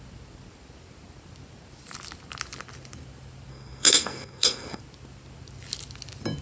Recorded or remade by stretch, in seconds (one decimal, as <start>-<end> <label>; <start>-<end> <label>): 0.0-3.5 recorded; 3.5-4.8 remade; 4.8-6.4 recorded